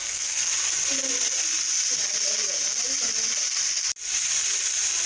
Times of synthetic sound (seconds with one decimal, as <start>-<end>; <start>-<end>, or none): 0.0-0.5